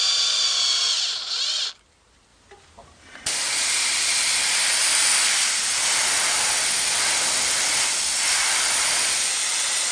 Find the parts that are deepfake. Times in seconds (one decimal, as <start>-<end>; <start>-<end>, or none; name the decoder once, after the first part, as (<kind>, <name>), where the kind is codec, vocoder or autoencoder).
none